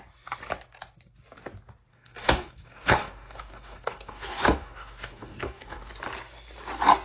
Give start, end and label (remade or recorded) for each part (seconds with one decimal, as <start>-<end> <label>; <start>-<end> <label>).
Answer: 0.0-1.9 recorded; 1.9-5.9 remade; 5.9-7.0 recorded